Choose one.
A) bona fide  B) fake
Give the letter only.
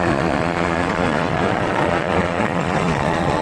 B